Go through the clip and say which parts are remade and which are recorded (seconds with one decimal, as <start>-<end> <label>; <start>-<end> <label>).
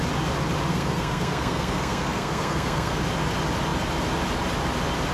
0.0-0.7 recorded; 0.7-3.0 remade; 3.0-5.1 recorded